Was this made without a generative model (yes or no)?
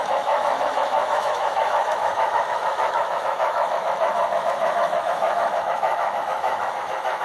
no